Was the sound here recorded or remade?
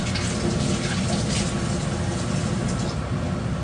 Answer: recorded